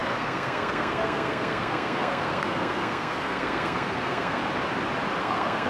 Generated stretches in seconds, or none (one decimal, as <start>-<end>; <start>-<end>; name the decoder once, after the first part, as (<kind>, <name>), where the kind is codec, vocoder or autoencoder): 0.0-4.4 (codec, SNAC); 5.2-5.7

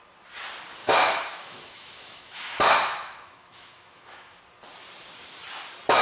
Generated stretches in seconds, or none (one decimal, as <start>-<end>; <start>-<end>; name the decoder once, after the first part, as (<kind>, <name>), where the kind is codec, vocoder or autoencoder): 0.8-4.4 (autoencoder, DAC-VAE)

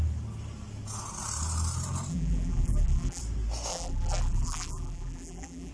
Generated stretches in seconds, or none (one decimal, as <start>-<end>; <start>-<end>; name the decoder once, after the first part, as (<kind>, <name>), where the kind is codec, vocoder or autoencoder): 2.1-3.2 (vocoder, BigVGAN v2); 3.7-5.7

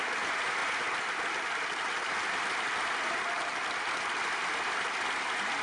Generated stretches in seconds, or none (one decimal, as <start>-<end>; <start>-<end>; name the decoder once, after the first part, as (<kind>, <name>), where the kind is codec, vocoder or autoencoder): none

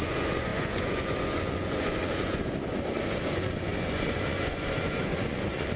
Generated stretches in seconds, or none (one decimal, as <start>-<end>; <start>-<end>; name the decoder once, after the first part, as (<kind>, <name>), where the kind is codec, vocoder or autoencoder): 0.0-5.8 (vocoder, Vocos)

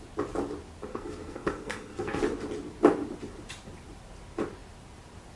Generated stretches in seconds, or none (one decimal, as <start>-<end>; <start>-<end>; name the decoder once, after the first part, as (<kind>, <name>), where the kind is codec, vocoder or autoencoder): 0.9-2.2 (codec, SNAC)

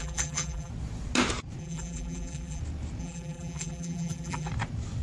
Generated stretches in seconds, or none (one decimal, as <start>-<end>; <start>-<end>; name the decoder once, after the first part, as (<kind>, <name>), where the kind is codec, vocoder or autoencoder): 0.0-0.7 (vocoder, BigVGAN v2); 1.6-2.6; 3.0-4.5